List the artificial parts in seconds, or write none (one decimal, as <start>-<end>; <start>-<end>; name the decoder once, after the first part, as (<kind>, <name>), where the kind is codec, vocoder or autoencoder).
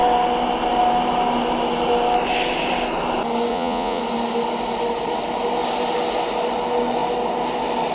3.5-4.0 (vocoder, Vocos)